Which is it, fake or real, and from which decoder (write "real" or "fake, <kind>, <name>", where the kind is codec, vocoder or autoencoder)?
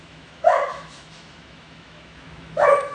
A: fake, autoencoder, DAC-VAE